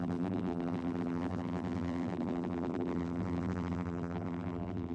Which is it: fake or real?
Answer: fake